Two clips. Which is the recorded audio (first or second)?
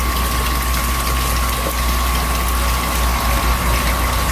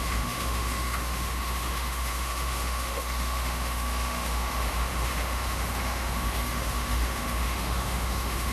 first